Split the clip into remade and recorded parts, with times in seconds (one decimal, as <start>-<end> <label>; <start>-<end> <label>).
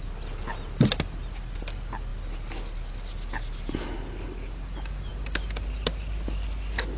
0.0-7.0 recorded